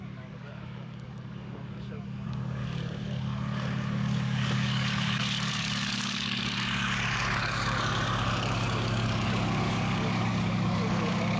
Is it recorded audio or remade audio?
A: remade